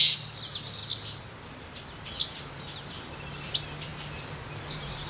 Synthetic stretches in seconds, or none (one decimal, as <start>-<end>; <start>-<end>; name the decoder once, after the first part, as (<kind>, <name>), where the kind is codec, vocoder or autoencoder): none